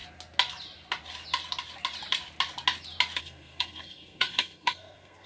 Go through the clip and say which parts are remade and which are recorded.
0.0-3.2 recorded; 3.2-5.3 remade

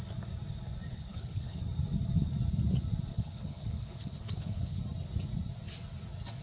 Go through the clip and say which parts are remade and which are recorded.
0.0-0.9 recorded; 0.9-1.6 remade; 1.6-3.1 recorded; 3.1-4.8 remade; 4.8-6.4 recorded

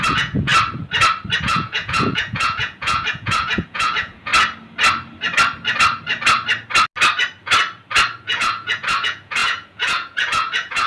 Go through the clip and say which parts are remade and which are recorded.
0.0-0.5 remade; 0.5-1.4 recorded; 1.4-4.3 remade; 4.3-8.2 recorded; 8.2-10.9 remade

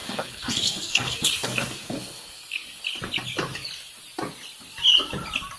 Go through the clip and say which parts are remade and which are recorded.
0.0-2.8 remade; 2.8-5.6 recorded

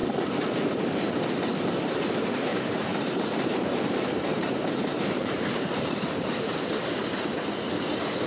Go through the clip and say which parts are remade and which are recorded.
0.0-1.1 remade; 1.1-2.5 recorded; 2.5-6.5 remade; 6.5-8.3 recorded

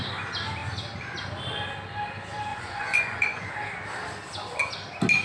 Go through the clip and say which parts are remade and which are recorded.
0.0-2.5 recorded; 2.5-3.5 remade; 3.5-5.2 recorded